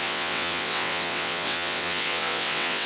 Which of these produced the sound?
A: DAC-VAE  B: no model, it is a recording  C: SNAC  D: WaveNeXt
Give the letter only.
D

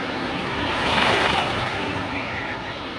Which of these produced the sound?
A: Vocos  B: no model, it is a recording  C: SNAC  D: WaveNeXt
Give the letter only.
C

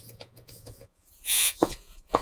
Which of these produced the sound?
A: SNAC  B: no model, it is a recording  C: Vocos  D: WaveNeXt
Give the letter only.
C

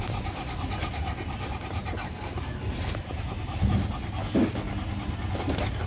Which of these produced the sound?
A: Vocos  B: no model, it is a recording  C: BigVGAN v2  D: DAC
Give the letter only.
B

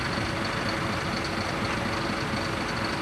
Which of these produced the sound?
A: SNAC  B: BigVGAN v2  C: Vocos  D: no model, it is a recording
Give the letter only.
D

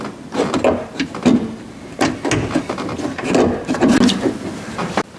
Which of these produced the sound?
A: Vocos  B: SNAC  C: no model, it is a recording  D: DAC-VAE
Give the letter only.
C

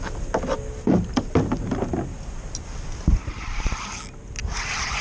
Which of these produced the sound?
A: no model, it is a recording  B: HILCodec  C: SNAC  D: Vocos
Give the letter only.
A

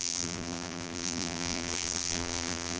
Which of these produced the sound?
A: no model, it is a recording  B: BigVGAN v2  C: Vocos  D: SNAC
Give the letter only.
B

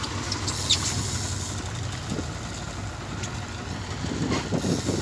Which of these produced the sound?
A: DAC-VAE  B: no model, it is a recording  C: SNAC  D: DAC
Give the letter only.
B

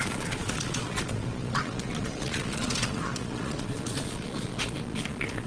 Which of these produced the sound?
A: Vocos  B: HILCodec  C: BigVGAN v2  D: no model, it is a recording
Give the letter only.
A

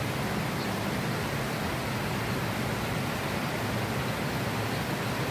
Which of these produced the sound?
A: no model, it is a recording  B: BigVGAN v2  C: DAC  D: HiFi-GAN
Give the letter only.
A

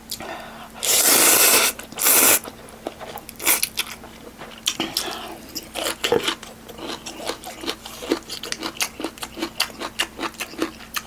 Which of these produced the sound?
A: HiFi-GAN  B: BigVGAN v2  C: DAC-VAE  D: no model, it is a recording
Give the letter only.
D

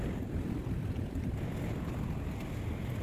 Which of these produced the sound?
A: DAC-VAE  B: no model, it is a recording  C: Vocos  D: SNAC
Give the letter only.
B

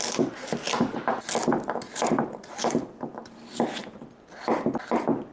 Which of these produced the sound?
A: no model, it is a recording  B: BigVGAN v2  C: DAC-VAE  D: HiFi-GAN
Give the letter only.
A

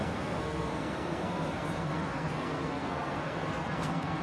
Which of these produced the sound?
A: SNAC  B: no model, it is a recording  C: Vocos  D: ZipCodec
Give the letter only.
A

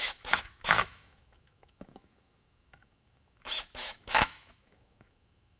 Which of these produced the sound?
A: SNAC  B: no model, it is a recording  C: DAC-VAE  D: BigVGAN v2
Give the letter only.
C